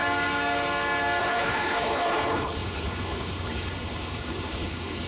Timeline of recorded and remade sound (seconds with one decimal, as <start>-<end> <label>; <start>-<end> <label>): 0.0-1.2 recorded; 1.2-5.1 remade